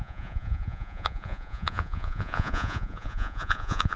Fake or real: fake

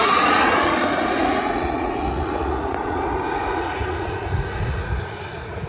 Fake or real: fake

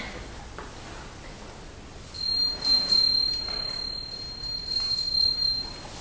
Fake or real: real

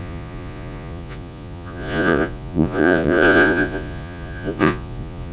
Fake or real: fake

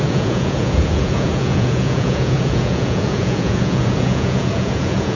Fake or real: fake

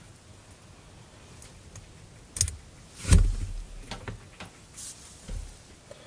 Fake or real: real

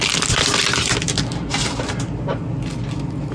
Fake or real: real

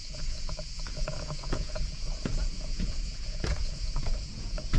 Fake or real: fake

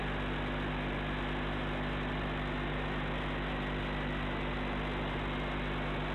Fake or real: real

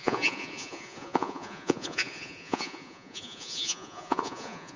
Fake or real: fake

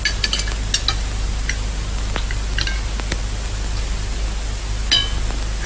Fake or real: real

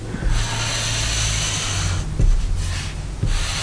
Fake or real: real